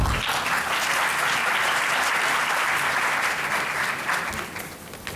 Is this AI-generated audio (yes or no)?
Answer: no